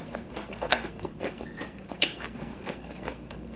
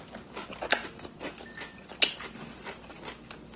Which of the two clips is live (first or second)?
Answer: second